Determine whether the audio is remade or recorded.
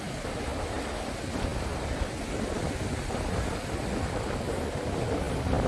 recorded